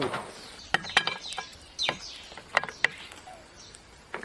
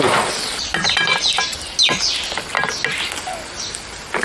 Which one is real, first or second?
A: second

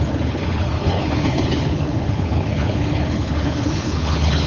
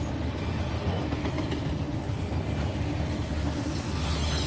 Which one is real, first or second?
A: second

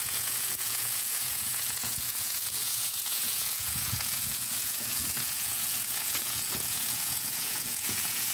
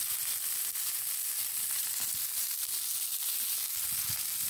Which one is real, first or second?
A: second